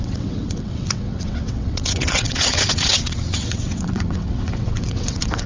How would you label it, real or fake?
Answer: fake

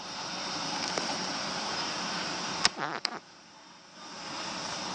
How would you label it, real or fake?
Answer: fake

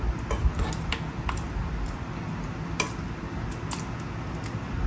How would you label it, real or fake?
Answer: real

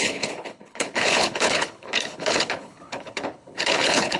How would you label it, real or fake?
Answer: fake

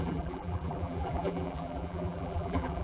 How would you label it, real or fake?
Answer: fake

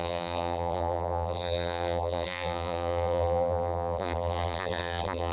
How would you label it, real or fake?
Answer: fake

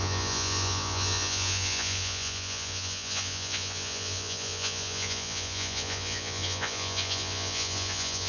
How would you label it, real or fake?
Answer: fake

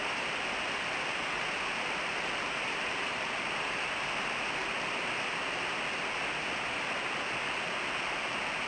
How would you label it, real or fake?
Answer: real